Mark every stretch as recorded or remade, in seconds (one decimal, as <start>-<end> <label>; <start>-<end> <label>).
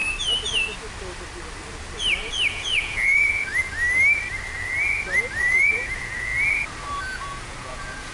0.0-2.5 recorded; 2.5-3.5 remade; 3.5-5.4 recorded; 5.4-6.3 remade; 6.3-7.0 recorded; 7.0-8.1 remade